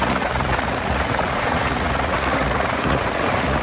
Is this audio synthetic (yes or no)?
yes